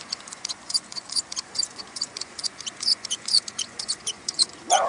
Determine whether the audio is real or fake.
fake